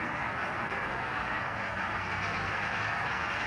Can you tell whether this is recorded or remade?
remade